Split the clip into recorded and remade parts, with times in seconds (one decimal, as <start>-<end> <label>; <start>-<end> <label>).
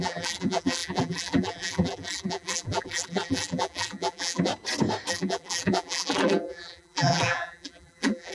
0.0-4.5 remade; 4.5-5.1 recorded; 5.1-8.3 remade